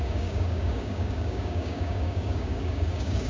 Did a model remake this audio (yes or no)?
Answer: yes